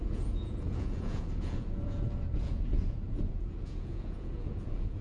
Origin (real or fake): fake